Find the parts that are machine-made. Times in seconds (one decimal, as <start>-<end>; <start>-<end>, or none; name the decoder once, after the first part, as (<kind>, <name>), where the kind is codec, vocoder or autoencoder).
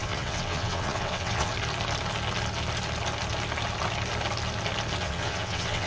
0.0-1.5 (vocoder, WaveNeXt); 5.0-5.9